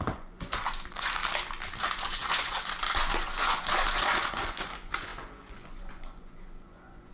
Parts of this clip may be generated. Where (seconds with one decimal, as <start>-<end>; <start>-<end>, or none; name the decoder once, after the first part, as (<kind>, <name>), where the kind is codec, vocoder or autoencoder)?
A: 0.0-1.2 (vocoder, Vocos); 1.8-7.1